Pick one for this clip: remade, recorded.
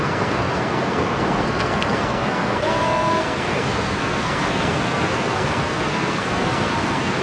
remade